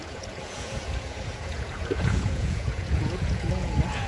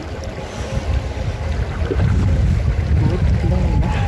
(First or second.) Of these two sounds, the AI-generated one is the first